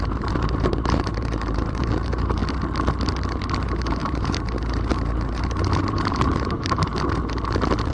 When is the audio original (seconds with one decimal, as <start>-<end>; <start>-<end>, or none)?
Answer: 2.4-3.6; 6.9-7.9